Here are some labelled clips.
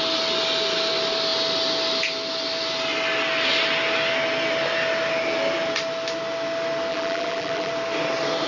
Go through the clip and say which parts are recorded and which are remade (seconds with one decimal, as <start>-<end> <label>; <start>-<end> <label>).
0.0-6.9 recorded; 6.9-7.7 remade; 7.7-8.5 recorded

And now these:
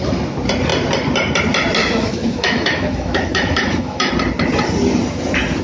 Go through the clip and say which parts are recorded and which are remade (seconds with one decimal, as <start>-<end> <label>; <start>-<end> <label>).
0.0-1.8 recorded; 1.8-4.1 remade; 4.1-5.6 recorded

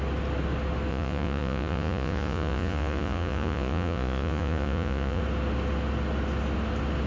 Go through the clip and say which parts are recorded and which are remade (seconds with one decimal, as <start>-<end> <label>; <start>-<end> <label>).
0.0-0.9 recorded; 0.9-5.2 remade; 5.2-7.1 recorded

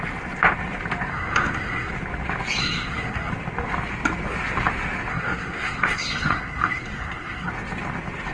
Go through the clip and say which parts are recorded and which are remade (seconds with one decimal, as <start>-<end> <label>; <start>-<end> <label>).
0.0-1.1 recorded; 1.1-1.9 remade; 1.9-2.6 recorded; 2.6-3.3 remade; 3.3-5.1 recorded; 5.1-7.5 remade; 7.5-8.3 recorded

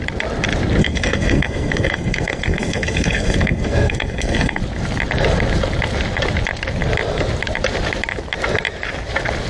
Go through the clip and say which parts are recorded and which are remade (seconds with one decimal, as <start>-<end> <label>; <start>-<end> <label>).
0.0-0.8 recorded; 0.8-4.6 remade; 4.6-9.5 recorded